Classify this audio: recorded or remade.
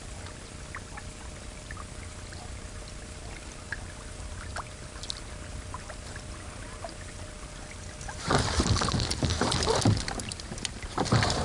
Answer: recorded